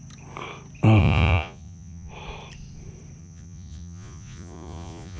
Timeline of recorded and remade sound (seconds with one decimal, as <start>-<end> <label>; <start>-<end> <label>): 0.0-1.0 recorded; 1.0-2.1 remade; 2.1-3.2 recorded; 3.2-5.2 remade